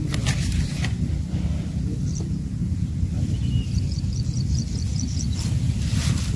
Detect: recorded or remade recorded